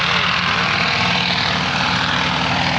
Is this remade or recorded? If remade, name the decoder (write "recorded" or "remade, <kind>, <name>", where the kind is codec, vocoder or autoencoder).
recorded